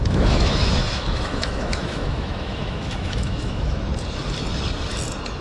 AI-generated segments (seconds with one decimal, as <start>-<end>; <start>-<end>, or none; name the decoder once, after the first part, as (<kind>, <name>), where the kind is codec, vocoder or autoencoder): 0.0-3.9 (autoencoder, DAC-VAE)